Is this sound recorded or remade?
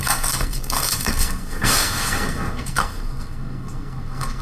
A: remade